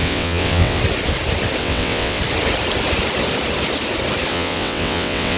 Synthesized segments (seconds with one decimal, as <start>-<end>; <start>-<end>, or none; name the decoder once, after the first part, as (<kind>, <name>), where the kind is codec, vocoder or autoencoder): 0.0-0.8 (vocoder, WaveNeXt); 1.6-2.2; 4.3-5.4